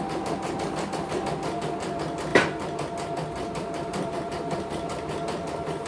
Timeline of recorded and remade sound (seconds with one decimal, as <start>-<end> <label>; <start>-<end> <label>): 0.0-2.3 recorded; 2.3-5.9 remade